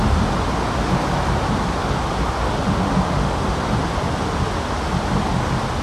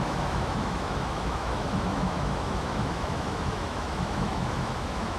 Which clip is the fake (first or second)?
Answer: second